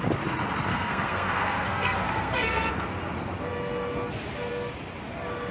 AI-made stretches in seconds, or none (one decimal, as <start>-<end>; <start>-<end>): 0.7-2.7